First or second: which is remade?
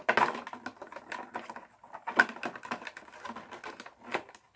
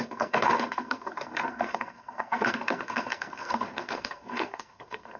second